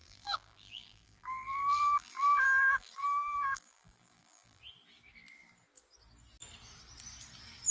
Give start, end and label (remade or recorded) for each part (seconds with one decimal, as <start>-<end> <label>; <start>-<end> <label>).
0.0-4.6 remade; 4.6-7.7 recorded